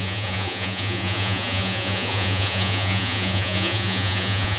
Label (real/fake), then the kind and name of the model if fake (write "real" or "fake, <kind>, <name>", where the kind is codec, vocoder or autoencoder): fake, vocoder, Vocos